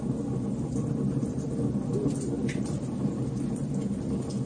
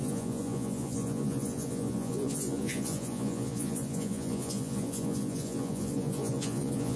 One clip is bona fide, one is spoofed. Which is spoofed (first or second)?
second